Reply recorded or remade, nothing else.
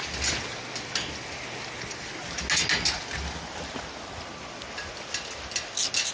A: recorded